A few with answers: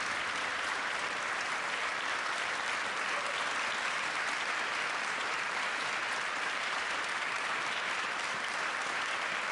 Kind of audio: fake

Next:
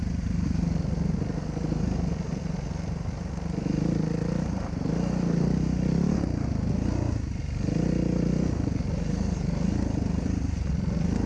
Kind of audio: real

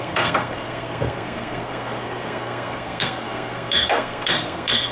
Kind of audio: fake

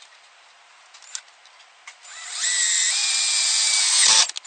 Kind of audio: real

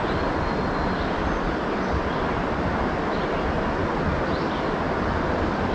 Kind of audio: real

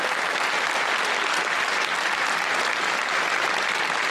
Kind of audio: real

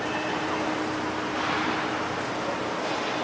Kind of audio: real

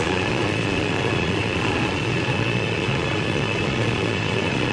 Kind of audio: fake